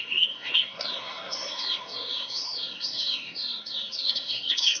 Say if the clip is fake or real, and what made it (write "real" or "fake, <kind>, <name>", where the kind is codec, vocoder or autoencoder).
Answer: fake, codec, SNAC